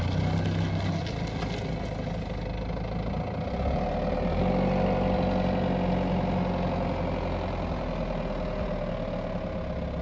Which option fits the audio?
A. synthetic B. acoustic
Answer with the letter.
B